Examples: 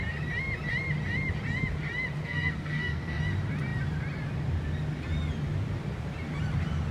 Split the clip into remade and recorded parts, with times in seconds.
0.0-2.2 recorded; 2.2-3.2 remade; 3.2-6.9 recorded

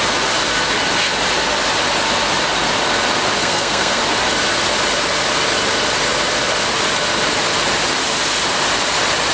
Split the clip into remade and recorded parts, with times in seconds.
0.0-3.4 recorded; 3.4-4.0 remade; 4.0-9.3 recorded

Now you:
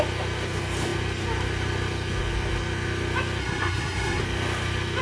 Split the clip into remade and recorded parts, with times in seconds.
0.0-3.4 recorded; 3.4-4.2 remade; 4.2-5.0 recorded